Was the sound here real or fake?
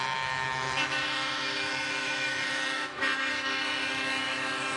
fake